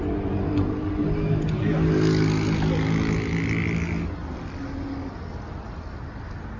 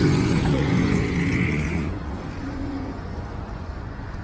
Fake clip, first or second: second